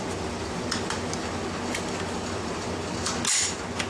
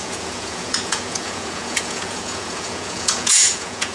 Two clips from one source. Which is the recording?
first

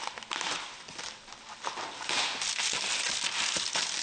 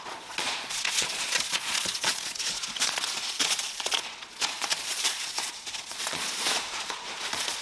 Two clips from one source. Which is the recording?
first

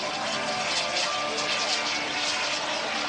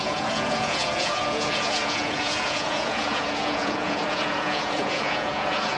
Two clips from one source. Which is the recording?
first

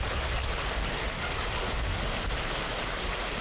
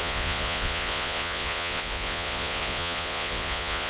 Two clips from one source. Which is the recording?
first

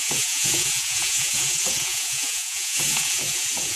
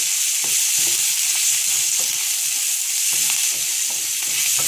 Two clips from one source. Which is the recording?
second